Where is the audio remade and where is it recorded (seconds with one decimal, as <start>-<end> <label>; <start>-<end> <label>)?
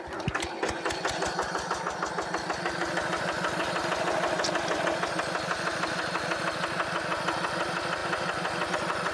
0.0-9.1 recorded